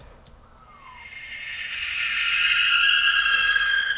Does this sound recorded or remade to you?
recorded